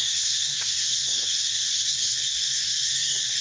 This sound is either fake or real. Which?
fake